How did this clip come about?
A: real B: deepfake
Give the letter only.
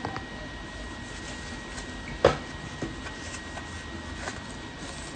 A